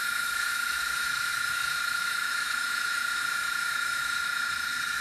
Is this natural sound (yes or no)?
no